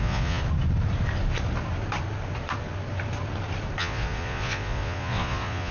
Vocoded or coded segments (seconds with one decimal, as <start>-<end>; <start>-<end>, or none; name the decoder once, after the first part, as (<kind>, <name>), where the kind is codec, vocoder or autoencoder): 0.0-0.4 (vocoder, Vocos); 3.8-5.7